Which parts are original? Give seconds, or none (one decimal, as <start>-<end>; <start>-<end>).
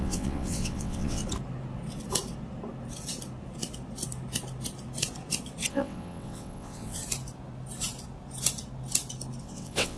1.2-5.7; 7.0-9.4